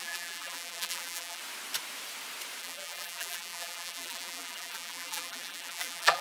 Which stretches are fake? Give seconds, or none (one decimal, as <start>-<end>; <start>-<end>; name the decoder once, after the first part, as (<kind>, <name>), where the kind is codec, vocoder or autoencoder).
0.0-1.4 (vocoder, BigVGAN v2); 2.6-6.2